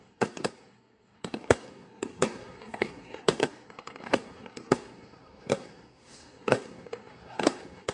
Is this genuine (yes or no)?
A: no